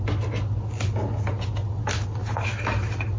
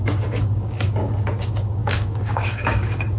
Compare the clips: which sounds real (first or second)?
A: first